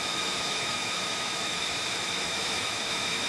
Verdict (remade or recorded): remade